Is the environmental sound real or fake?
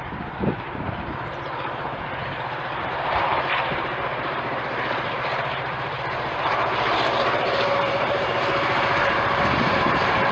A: fake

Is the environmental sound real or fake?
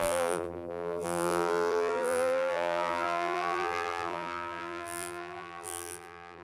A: fake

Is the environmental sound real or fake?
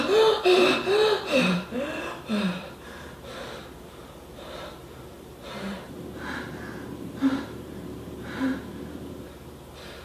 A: fake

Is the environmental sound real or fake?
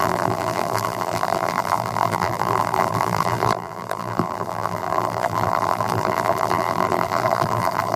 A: fake